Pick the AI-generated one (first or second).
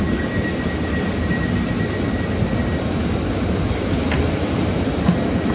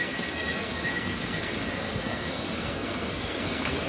second